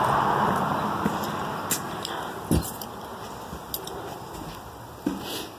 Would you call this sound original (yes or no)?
yes